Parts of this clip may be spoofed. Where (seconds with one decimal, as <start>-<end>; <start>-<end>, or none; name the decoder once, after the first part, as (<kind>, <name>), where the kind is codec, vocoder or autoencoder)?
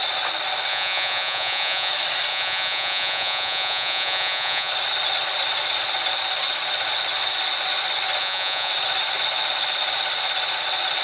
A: 0.7-1.9 (vocoder, Vocos); 2.3-4.7; 8.2-8.7